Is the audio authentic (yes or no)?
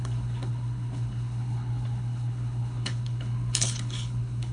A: no